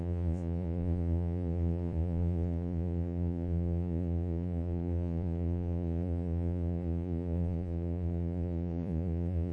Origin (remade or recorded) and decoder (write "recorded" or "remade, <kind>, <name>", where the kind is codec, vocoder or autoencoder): remade, vocoder, Vocos